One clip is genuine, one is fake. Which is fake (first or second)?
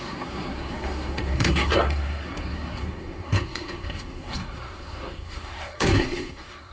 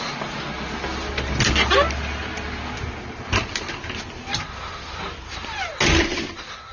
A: first